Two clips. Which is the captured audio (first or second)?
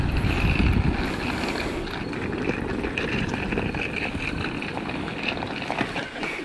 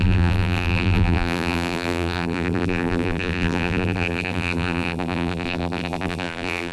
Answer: first